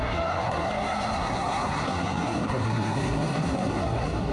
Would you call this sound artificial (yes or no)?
yes